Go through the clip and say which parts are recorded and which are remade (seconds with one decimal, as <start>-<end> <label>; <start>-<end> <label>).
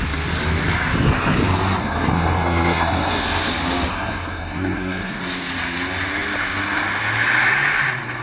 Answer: 0.0-1.8 recorded; 1.8-3.5 remade; 3.5-3.9 recorded; 3.9-5.2 remade; 5.2-8.2 recorded